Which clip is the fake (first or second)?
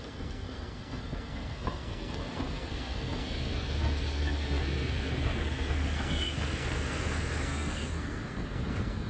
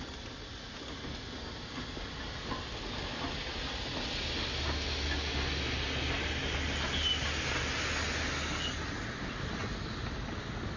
first